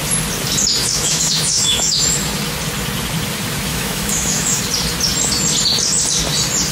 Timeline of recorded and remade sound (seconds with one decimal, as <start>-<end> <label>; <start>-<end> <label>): 0.0-0.8 recorded; 0.8-2.0 remade; 2.0-3.7 recorded; 3.7-4.6 remade; 4.6-6.7 recorded